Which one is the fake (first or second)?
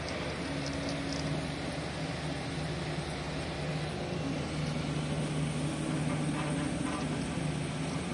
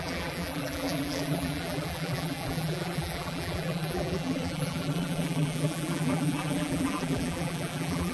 second